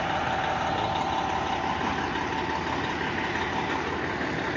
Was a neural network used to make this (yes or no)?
no